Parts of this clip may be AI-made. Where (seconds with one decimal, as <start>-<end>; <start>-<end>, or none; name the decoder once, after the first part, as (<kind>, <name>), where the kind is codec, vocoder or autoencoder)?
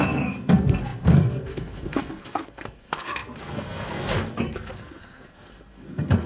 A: 0.0-6.3 (codec, SNAC)